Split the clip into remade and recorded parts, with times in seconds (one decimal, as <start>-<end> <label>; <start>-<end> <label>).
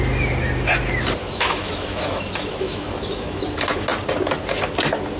0.0-1.2 recorded; 1.2-3.4 remade; 3.4-5.2 recorded